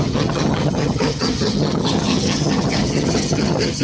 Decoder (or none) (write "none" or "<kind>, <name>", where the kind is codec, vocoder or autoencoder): vocoder, HiFi-GAN